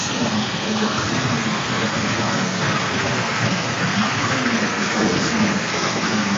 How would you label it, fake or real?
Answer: fake